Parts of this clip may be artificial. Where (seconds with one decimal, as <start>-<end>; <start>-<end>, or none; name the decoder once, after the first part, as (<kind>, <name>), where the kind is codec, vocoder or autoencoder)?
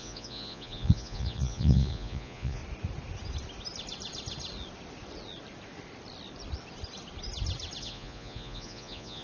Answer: 0.0-2.6 (vocoder, Vocos); 7.8-9.2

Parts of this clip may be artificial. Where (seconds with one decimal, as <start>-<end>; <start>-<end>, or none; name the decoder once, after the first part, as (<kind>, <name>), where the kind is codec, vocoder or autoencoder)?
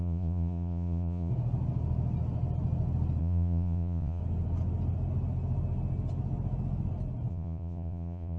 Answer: 0.0-1.3 (vocoder, Vocos); 3.2-4.2; 7.3-8.4